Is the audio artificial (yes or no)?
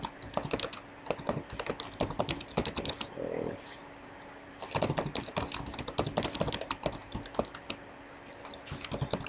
no